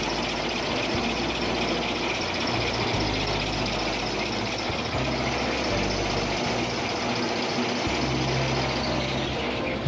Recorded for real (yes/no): yes